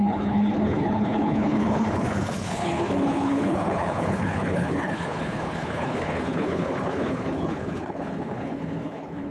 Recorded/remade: remade